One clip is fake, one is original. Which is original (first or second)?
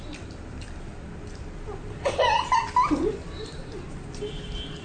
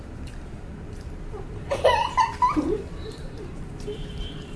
first